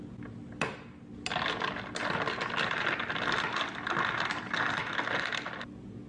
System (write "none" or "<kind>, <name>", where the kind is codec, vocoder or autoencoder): none